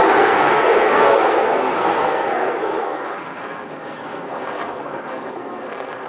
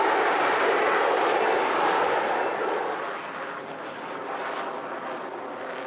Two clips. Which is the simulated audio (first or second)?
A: first